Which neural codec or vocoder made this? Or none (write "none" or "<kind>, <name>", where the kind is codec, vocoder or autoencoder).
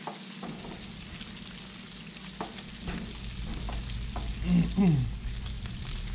none